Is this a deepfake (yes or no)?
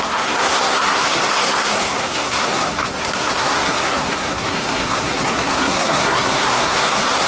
yes